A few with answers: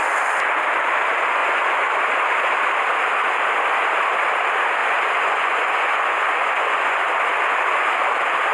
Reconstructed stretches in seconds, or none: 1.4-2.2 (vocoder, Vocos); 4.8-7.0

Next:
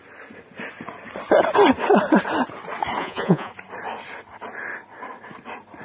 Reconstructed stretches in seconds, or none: 3.0-3.5 (vocoder, Vocos)

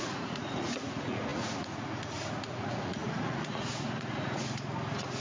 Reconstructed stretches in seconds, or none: 0.0-5.2 (vocoder, Vocos)

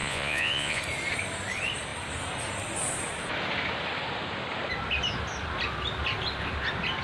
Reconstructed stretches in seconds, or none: 0.0-0.8 (vocoder, Vocos)